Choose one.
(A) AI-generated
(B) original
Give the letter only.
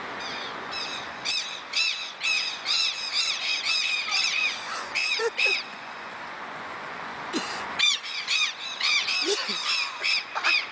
A